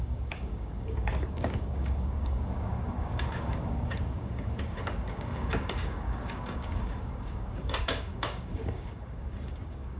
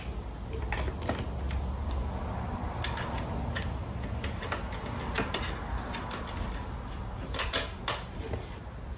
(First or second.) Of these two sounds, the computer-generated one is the first